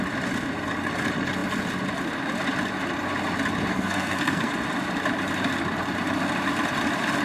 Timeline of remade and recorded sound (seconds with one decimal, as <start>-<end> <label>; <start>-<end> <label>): 0.0-3.7 recorded; 3.7-4.5 remade; 4.5-7.2 recorded